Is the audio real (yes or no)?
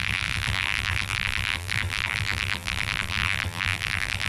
no